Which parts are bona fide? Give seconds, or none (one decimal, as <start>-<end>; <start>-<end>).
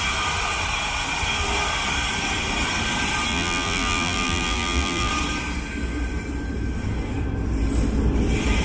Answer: 0.0-3.3; 5.1-8.6